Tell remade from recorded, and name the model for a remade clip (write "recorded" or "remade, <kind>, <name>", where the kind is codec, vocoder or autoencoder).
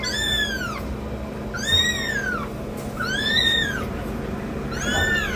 recorded